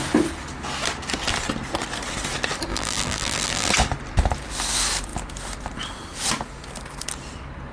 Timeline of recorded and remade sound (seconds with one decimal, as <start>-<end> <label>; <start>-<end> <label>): 0.0-2.7 recorded; 2.7-3.7 remade; 3.7-7.7 recorded